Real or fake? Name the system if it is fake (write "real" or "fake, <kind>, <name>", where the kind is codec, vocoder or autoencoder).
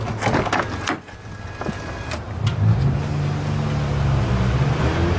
real